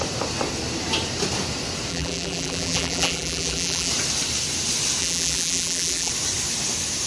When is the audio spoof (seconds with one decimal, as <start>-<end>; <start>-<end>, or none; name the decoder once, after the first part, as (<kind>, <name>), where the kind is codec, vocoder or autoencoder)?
1.9-3.9 (vocoder, BigVGAN v2); 5.0-6.1